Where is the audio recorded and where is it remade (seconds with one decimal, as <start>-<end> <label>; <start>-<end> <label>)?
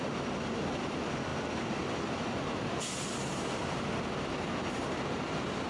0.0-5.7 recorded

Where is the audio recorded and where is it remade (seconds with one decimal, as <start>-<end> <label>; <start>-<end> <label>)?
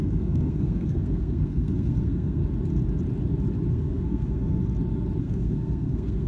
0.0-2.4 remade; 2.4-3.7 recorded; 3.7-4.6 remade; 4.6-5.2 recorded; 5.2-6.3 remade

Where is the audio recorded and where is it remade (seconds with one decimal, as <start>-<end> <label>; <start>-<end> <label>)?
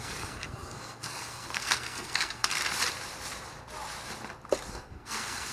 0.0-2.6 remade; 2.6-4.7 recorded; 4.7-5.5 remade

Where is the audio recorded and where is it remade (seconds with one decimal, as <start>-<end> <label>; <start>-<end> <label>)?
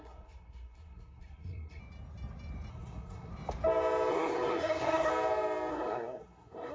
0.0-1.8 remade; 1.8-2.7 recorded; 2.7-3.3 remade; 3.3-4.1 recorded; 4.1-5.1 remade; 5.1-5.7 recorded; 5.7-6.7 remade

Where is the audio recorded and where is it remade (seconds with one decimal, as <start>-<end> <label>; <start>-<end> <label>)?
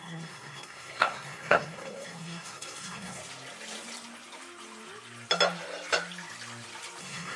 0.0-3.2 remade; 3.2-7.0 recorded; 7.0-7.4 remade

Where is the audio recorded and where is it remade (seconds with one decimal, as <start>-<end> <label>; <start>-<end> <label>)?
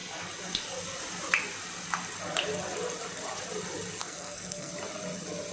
0.0-4.0 recorded; 4.0-4.7 remade; 4.7-5.5 recorded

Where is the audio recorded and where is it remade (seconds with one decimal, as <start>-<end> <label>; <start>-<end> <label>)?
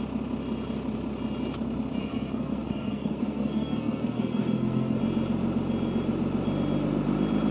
0.0-2.0 recorded; 2.0-5.0 remade; 5.0-7.5 recorded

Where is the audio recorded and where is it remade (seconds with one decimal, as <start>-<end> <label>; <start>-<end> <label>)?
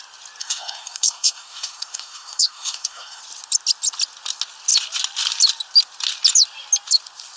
0.0-0.4 recorded; 0.4-3.2 remade; 3.2-7.4 recorded